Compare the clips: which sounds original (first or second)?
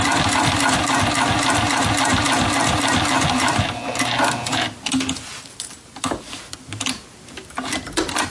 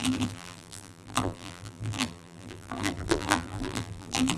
first